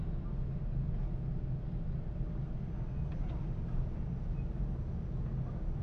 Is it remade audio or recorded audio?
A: recorded